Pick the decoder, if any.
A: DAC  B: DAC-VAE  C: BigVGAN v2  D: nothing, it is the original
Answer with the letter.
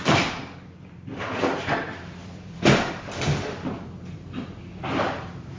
C